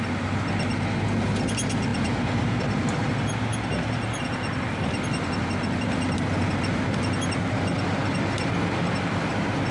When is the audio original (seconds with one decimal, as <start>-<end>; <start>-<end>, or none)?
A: 0.0-9.7